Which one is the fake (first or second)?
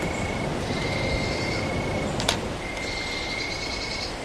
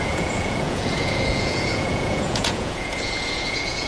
second